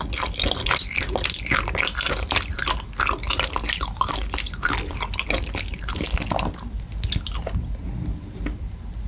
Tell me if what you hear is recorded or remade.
recorded